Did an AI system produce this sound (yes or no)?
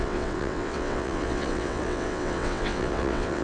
yes